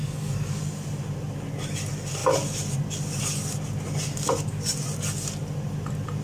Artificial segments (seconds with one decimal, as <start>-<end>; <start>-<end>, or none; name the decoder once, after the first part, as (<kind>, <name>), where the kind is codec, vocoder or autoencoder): 0.0-0.6 (codec, DAC)